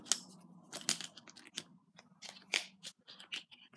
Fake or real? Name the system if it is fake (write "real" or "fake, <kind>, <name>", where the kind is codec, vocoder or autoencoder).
real